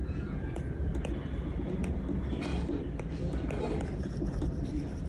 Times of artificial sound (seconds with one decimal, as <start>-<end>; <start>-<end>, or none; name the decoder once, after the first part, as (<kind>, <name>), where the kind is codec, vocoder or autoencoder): 0.0-0.9 (vocoder, Vocos)